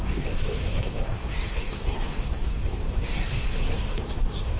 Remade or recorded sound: remade